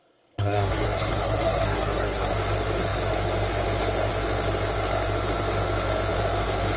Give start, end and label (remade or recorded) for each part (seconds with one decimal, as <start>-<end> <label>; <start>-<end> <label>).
0.0-2.3 remade; 2.3-6.8 recorded